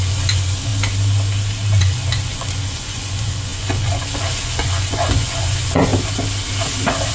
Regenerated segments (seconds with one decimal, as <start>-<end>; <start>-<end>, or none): 0.0-0.7; 1.8-5.9